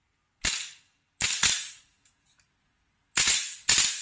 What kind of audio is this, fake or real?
real